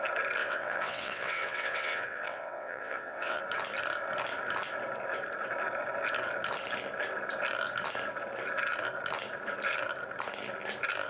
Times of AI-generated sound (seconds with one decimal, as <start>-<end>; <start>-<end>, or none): 0.4-3.4